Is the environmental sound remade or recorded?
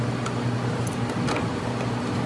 recorded